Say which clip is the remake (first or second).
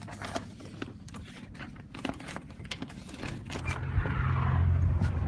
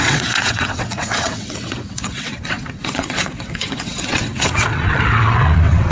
second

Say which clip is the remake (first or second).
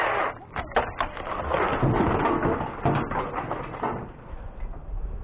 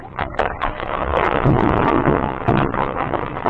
second